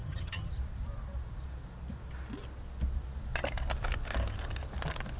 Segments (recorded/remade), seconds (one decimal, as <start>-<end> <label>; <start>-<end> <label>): 0.0-0.5 remade; 0.5-5.2 recorded